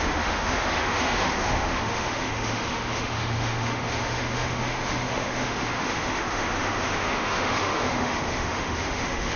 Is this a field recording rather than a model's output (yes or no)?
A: no